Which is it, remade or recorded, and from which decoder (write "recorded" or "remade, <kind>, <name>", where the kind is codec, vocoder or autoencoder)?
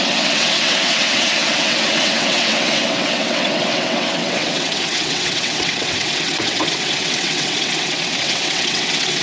remade, vocoder, WaveNeXt